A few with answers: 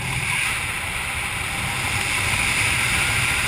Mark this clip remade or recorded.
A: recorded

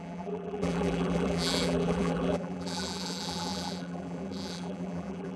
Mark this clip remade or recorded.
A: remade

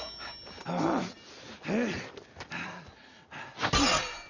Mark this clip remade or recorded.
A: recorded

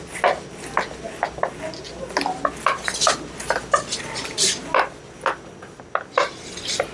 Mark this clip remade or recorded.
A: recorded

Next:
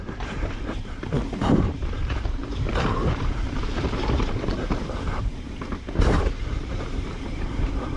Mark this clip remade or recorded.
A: remade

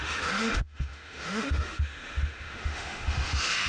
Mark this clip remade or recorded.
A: remade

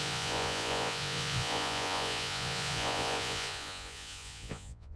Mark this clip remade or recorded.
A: remade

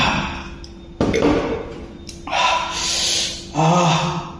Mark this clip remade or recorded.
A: recorded